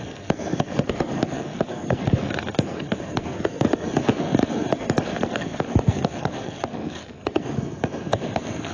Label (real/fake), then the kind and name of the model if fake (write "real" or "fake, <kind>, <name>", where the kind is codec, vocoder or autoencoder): fake, codec, SNAC